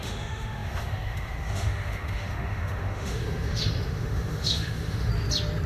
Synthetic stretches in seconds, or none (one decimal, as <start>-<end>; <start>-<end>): 0.0-5.1